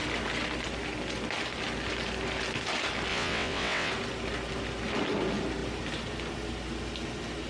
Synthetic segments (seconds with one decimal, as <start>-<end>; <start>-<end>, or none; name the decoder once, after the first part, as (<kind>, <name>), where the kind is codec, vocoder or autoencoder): 3.1-3.9 (vocoder, WaveNeXt)